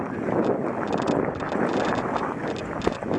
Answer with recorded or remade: recorded